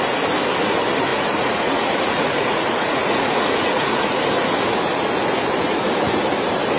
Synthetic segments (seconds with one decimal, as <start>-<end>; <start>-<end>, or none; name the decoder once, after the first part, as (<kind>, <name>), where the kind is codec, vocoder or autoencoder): 1.1-4.2 (vocoder, Vocos)